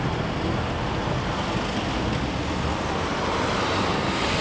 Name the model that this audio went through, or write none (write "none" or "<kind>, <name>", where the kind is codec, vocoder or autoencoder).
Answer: none